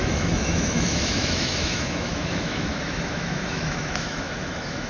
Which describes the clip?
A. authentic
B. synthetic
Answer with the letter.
B